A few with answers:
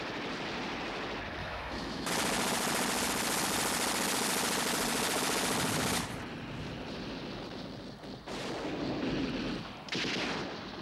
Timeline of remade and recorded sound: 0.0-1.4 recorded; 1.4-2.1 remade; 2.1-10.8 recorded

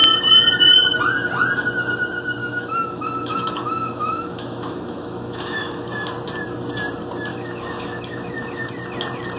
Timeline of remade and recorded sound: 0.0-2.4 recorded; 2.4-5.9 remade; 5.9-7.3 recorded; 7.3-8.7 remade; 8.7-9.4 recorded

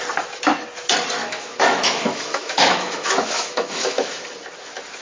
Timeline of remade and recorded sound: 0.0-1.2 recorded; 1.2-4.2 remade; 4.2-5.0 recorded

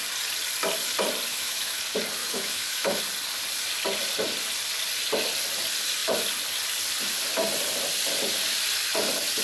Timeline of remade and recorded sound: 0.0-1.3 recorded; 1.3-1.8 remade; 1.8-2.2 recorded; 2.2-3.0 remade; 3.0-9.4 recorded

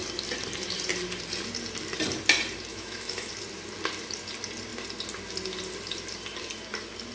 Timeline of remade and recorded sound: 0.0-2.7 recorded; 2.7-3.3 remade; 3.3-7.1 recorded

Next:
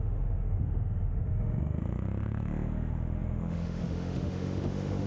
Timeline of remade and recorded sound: 0.0-5.1 remade

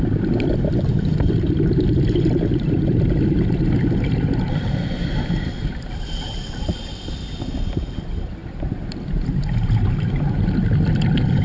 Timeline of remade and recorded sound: 0.0-11.4 recorded